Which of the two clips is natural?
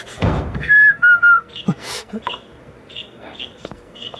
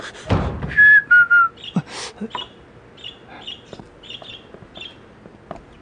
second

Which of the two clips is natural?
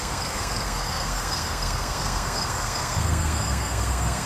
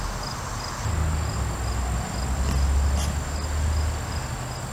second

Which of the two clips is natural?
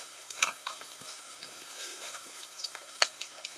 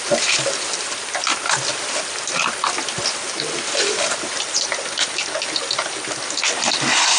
second